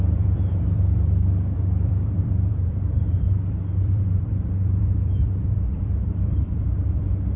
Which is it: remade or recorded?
remade